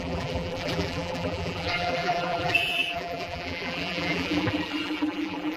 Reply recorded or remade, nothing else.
remade